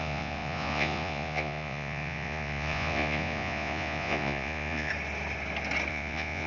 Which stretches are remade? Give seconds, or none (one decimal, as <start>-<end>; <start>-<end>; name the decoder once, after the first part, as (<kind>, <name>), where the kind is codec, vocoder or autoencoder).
0.0-4.9 (vocoder, Vocos); 5.9-6.5